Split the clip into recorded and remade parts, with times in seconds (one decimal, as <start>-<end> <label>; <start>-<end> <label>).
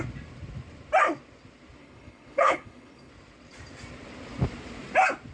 0.0-1.8 recorded; 1.8-3.1 remade; 3.1-5.3 recorded